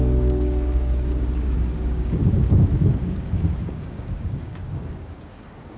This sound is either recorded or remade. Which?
remade